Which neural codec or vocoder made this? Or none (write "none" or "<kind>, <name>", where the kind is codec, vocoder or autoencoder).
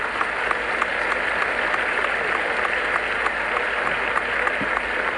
none